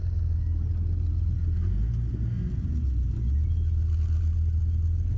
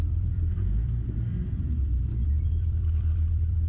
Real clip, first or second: first